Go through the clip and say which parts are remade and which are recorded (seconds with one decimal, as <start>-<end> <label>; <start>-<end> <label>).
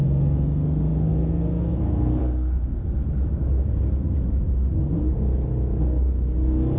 0.0-2.8 remade; 2.8-6.8 recorded